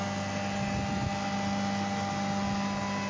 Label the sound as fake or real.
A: real